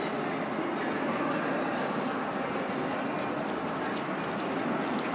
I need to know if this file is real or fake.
real